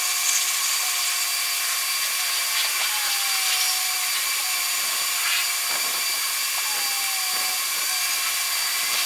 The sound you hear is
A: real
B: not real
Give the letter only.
A